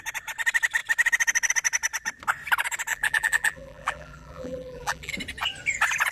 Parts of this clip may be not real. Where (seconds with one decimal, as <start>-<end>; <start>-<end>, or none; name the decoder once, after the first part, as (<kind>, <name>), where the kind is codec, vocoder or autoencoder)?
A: 2.9-5.1 (vocoder, BigVGAN v2)